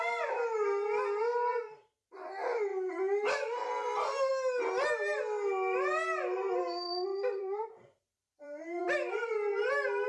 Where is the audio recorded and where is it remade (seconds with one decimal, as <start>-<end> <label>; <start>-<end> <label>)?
0.0-1.5 recorded; 1.5-2.0 remade; 2.0-7.1 recorded; 7.1-9.7 remade; 9.7-10.1 recorded